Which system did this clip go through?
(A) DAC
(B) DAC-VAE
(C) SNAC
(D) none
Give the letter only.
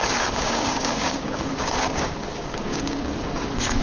A